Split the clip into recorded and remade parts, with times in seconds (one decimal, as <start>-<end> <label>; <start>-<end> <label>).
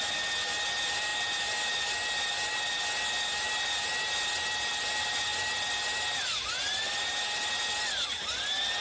0.0-8.8 recorded